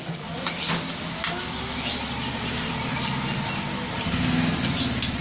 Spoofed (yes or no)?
no